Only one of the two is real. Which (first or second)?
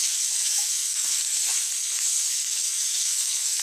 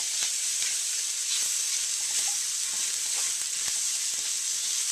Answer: second